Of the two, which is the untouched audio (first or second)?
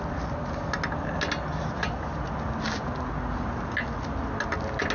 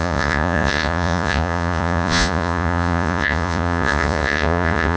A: first